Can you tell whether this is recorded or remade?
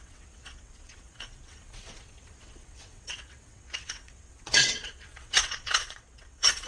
remade